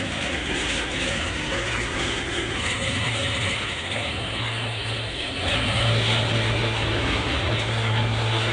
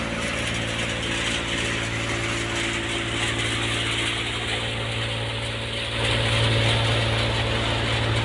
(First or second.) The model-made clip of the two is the first